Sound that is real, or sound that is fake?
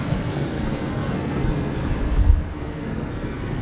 fake